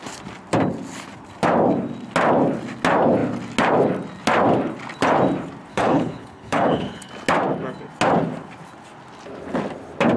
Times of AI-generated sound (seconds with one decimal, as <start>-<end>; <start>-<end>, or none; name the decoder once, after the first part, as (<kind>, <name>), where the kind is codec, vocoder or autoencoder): 5.7-7.1 (codec, HILCodec)